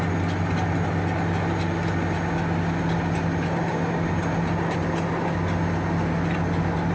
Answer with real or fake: real